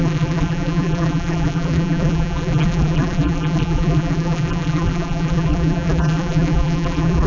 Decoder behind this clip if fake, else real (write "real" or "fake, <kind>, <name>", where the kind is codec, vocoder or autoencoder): fake, vocoder, BigVGAN v2